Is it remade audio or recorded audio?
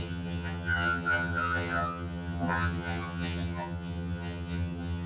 remade